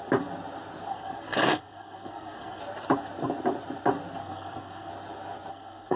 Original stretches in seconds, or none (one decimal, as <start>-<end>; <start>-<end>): 0.0-0.9; 2.6-4.2; 4.9-5.5